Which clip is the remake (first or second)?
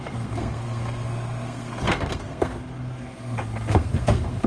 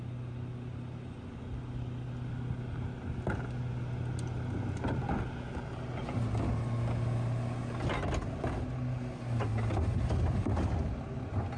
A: first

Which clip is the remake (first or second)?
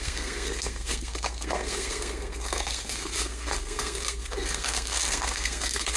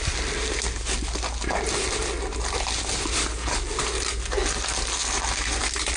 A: first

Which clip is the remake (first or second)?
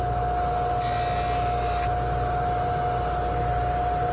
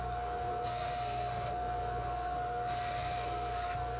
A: second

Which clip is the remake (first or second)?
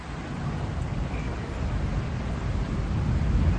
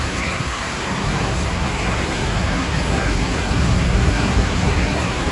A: second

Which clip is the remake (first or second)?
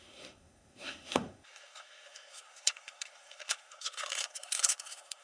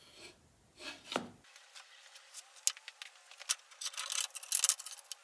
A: first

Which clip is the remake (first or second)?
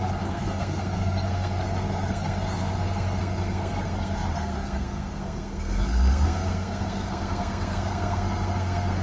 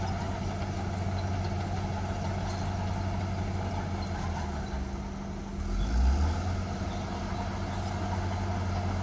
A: first